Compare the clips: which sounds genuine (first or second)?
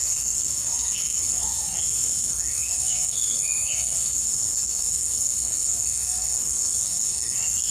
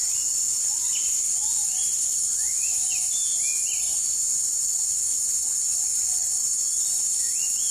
second